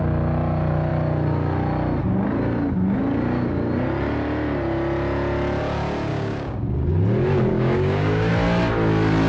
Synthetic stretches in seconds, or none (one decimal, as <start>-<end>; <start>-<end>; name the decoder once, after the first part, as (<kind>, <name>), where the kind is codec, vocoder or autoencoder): 6.1-6.9 (codec, DAC); 7.5-8.3